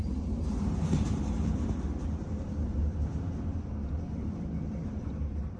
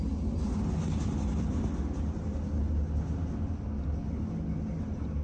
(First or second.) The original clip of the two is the second